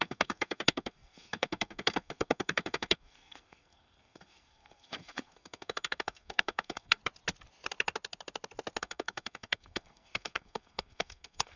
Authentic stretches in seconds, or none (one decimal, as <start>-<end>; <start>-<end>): 7.0-8.8